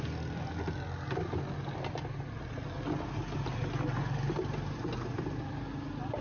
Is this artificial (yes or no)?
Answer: no